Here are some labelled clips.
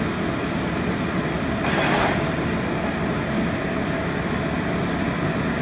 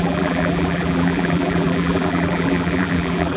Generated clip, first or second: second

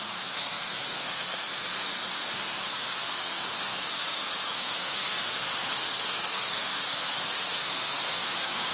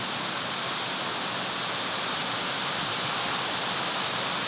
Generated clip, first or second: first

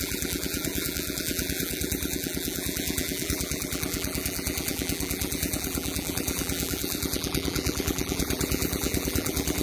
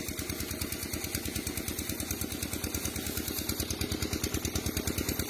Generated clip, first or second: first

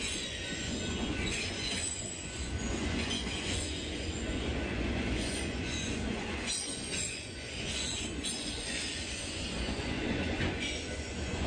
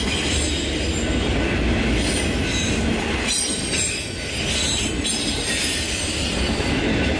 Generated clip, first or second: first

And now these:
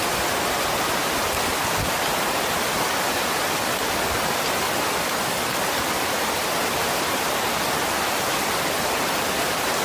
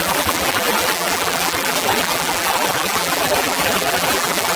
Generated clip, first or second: second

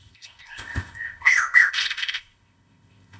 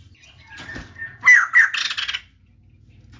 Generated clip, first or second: first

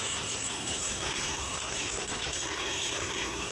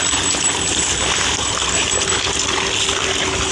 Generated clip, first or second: first